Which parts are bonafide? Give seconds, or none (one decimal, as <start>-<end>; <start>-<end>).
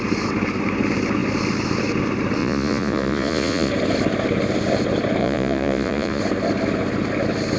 0.0-2.4; 3.7-5.2; 6.2-7.6